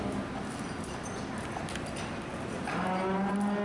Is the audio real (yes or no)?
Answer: yes